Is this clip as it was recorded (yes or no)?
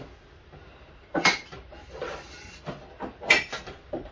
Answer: yes